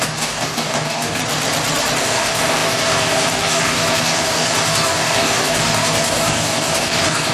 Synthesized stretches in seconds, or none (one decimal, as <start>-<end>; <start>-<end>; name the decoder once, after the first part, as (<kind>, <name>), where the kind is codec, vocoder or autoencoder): 0.0-1.2 (codec, DAC); 2.0-7.3

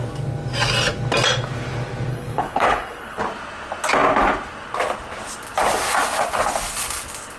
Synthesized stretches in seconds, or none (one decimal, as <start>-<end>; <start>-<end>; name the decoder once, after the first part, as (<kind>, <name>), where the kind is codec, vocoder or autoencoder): 2.1-3.2 (codec, HILCodec)

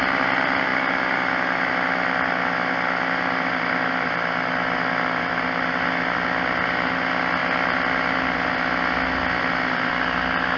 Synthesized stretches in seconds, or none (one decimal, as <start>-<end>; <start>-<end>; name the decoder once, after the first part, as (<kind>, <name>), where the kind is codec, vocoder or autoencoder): none

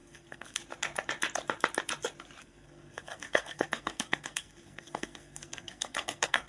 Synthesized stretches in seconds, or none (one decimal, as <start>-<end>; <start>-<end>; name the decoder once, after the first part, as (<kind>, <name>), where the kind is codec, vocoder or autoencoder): 0.0-0.6 (codec, SNAC); 2.4-6.5

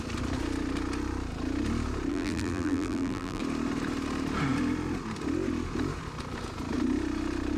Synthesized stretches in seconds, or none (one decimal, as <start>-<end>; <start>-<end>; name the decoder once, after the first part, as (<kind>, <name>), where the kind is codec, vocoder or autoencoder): 2.1-3.4 (vocoder, BigVGAN v2)